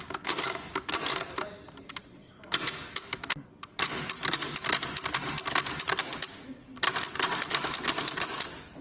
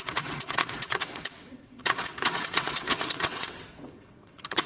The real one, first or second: first